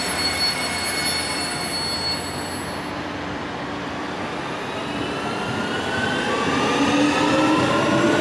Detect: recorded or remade recorded